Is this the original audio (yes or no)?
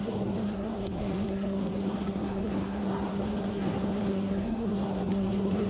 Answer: no